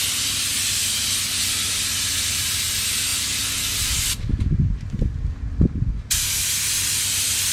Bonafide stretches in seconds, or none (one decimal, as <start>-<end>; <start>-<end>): 0.0-7.5